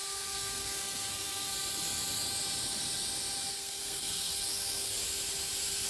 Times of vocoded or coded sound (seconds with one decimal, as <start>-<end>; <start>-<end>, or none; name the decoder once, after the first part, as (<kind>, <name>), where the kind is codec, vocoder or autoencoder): 0.0-1.5 (codec, SNAC); 3.5-5.0